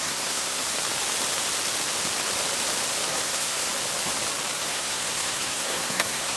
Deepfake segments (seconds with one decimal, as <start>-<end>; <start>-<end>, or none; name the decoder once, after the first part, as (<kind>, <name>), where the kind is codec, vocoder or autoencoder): 0.0-0.6 (codec, SNAC); 3.1-3.7; 4.6-6.4